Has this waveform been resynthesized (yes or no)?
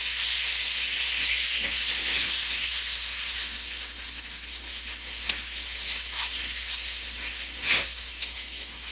yes